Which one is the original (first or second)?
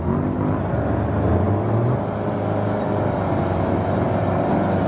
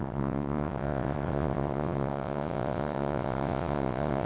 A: first